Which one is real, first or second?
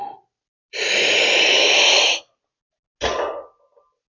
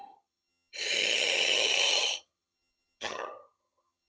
first